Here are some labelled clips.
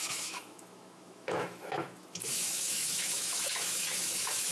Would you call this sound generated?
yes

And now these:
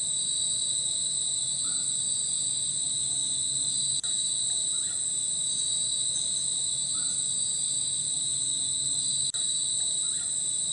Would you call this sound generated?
no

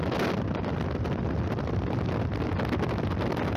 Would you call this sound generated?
no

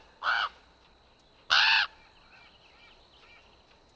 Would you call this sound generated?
no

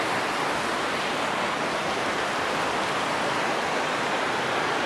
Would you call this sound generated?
no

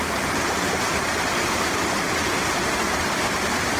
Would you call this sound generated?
no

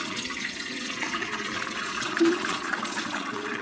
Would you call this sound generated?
yes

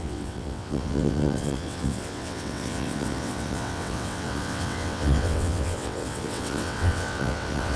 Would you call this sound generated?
yes